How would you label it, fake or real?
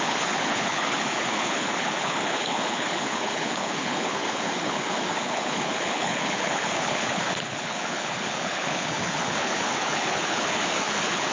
fake